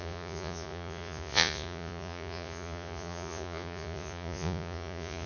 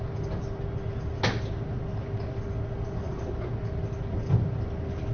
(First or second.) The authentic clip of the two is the second